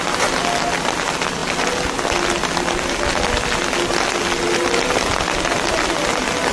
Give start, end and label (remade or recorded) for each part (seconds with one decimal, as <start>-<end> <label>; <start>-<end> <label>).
0.0-6.5 recorded